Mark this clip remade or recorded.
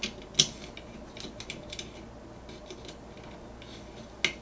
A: recorded